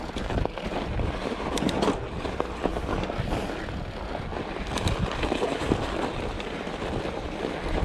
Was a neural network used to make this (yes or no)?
no